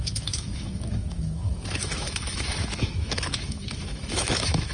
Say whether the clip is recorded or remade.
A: remade